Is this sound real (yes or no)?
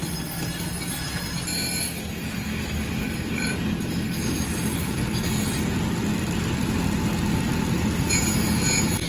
yes